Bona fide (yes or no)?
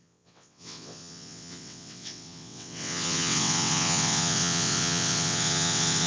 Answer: no